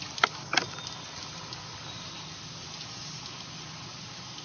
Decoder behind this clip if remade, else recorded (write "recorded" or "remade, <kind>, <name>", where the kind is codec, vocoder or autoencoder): recorded